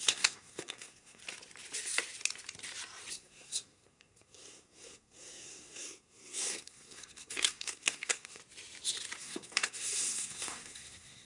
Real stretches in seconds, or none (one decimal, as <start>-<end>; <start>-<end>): 1.2-3.1; 8.4-9.2